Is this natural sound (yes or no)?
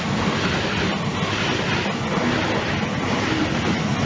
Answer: yes